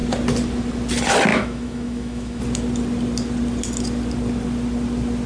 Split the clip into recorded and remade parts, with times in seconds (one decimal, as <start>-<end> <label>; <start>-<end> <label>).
0.0-1.3 recorded; 1.3-2.4 remade; 2.4-5.3 recorded